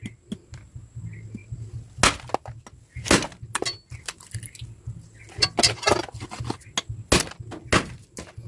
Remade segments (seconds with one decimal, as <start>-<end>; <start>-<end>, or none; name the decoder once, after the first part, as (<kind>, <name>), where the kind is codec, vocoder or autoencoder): none